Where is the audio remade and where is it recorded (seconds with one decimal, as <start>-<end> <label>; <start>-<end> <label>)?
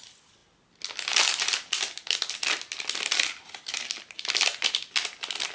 0.0-5.5 recorded